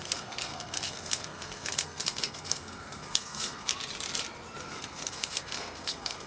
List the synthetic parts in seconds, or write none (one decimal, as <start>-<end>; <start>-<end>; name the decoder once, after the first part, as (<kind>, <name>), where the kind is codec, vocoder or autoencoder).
0.0-3.7 (codec, SNAC); 4.6-6.3